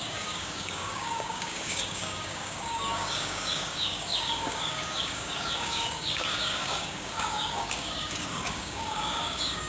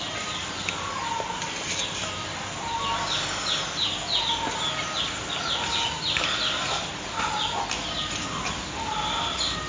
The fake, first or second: first